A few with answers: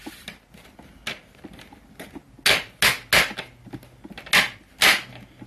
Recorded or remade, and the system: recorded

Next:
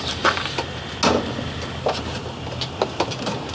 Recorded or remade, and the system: recorded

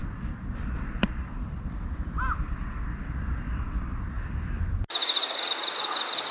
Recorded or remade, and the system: recorded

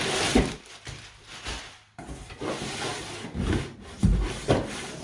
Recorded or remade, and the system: recorded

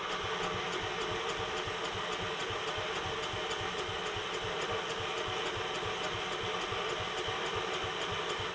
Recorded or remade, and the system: recorded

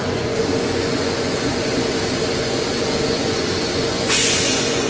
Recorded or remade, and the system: remade, vocoder, Vocos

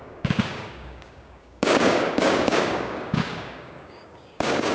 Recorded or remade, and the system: remade, codec, DAC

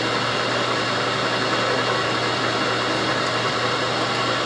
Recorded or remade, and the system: recorded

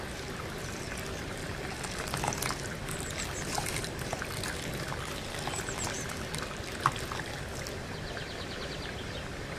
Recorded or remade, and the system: recorded